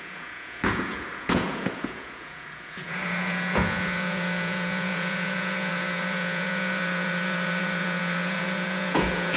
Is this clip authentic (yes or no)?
no